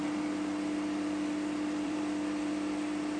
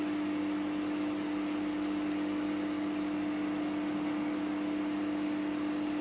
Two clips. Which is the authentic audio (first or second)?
second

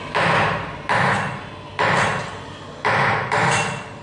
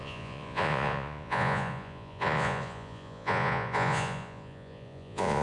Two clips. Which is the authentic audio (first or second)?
first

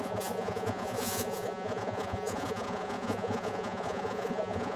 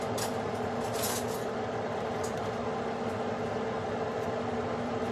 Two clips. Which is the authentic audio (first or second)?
second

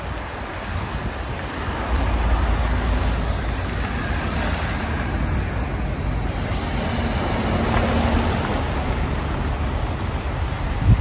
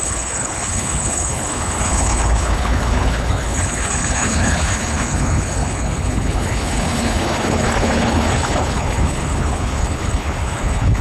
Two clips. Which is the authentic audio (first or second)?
first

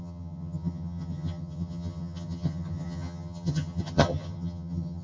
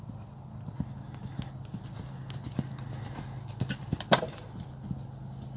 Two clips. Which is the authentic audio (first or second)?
second